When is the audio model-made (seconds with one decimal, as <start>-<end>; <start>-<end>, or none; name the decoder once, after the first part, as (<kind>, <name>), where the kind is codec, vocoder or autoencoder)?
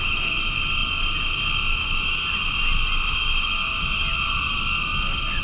none